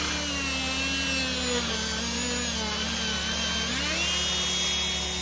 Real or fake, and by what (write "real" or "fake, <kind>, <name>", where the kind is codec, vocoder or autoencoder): real